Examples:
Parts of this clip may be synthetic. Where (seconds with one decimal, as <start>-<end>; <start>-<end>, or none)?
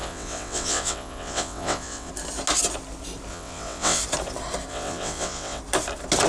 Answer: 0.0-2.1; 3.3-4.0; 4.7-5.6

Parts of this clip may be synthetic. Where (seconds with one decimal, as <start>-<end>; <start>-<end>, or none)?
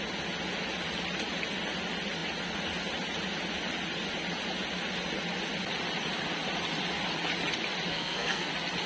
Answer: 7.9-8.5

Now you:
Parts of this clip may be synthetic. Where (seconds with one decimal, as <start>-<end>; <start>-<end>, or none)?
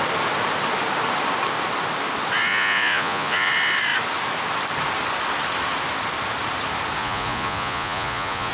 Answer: 2.5-3.5; 7.0-8.5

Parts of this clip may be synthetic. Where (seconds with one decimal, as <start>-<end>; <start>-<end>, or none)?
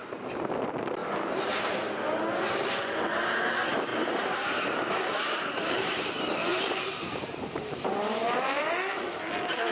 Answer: 1.0-2.2; 3.9-6.1; 6.5-8.7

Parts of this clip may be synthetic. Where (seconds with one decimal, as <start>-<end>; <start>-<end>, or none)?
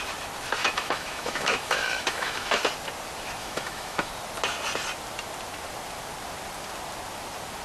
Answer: 0.6-2.6; 3.4-4.1